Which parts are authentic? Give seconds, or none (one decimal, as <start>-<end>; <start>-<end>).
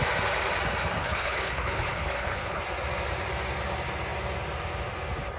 0.0-1.0; 2.6-5.4